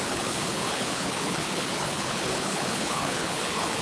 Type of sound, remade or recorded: remade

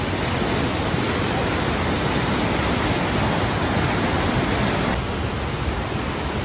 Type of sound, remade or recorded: recorded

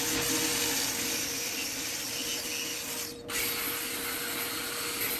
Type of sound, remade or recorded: recorded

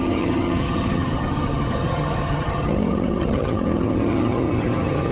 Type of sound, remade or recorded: remade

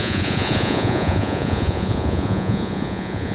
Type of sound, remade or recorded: remade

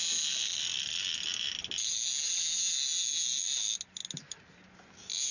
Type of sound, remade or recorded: recorded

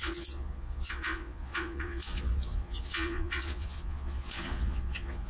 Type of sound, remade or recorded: remade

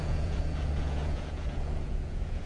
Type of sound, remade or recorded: remade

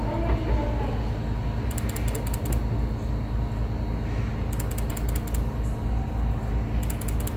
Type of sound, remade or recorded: recorded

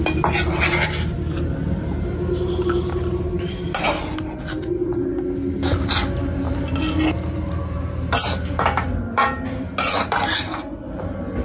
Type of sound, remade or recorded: recorded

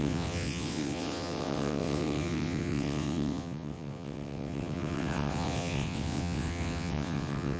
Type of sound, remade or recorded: remade